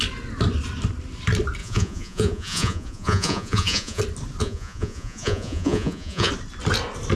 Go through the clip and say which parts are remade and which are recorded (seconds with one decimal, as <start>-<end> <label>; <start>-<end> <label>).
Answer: 0.0-1.6 recorded; 1.6-4.0 remade; 4.0-4.4 recorded; 4.4-6.3 remade; 6.3-7.2 recorded

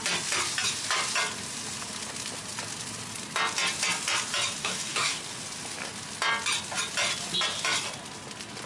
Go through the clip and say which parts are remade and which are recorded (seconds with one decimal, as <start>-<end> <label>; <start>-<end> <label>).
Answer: 0.0-4.6 recorded; 4.6-5.2 remade; 5.2-8.7 recorded

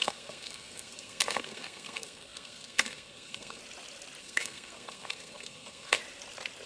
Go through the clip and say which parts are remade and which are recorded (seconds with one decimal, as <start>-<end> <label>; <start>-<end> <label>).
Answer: 0.0-3.6 remade; 3.6-4.2 recorded; 4.2-6.0 remade; 6.0-6.7 recorded